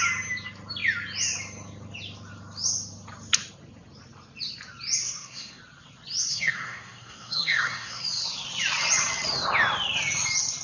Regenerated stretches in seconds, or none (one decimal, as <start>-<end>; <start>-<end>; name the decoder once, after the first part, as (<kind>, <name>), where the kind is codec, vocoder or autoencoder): 5.0-5.6 (codec, SNAC); 6.3-8.0